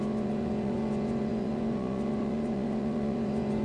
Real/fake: fake